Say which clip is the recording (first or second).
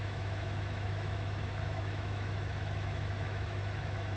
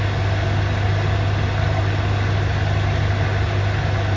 second